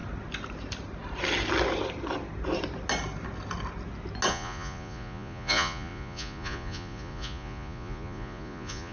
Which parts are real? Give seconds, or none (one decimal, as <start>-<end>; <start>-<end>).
0.0-4.3